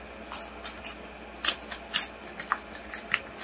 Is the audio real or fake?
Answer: real